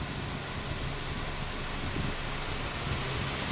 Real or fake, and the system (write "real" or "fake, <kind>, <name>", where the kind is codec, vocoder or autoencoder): real